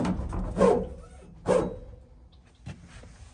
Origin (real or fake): real